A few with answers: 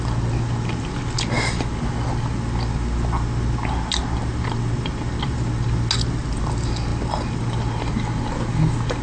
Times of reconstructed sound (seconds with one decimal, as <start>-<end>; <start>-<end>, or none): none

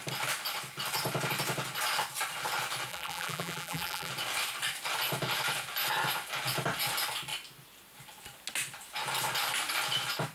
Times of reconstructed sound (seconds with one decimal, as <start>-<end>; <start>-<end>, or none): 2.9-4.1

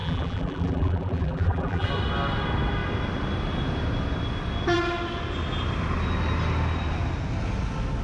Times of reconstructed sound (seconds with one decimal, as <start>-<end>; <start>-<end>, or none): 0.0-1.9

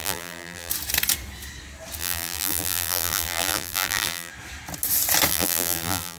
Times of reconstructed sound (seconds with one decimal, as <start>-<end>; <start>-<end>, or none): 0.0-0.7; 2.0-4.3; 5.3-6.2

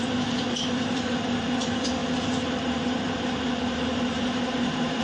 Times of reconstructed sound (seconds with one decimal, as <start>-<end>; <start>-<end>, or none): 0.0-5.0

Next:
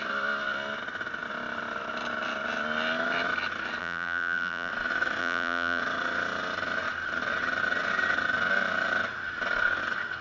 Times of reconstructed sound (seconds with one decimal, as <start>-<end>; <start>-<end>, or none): 3.8-4.7; 5.2-5.8

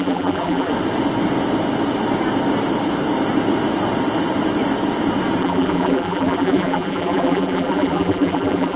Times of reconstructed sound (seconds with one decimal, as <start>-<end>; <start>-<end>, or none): 0.0-0.7; 5.4-8.8